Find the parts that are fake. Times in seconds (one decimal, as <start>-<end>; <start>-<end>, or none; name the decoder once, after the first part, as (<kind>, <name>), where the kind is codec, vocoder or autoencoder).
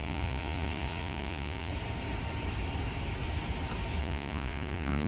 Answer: 0.0-1.7 (vocoder, Vocos); 4.0-5.1